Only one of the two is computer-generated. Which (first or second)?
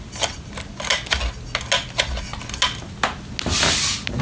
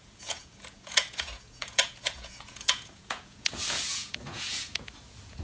second